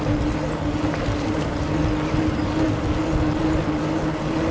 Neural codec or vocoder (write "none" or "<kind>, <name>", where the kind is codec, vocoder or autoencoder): none